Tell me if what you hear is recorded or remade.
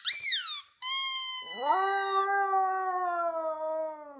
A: recorded